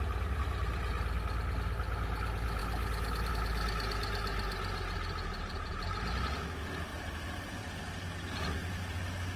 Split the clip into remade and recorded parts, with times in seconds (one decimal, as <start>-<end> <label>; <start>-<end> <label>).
0.0-9.4 recorded